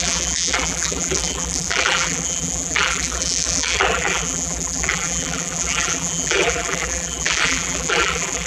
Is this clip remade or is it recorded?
remade